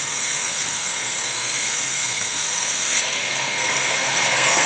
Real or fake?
fake